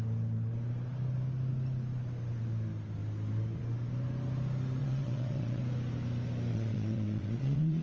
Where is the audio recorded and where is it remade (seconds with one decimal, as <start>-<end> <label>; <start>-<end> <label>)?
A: 0.0-4.8 recorded; 4.8-5.6 remade; 5.6-6.5 recorded; 6.5-7.8 remade